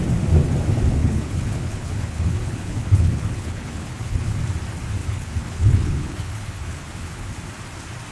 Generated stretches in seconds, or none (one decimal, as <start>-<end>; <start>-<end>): 1.0-4.3; 5.0-7.3